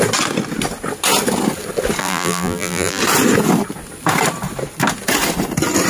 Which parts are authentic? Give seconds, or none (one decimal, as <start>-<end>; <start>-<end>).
0.0-2.0; 3.0-5.9